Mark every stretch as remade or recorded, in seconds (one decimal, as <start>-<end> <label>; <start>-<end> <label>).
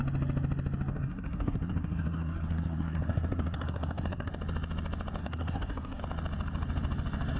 0.0-0.9 recorded; 0.9-4.3 remade; 4.3-5.2 recorded; 5.2-6.0 remade; 6.0-7.4 recorded